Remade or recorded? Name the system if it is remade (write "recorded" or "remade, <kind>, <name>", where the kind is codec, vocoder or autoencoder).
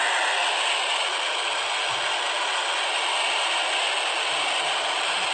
recorded